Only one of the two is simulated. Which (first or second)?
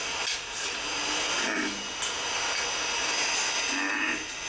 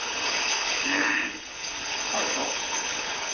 second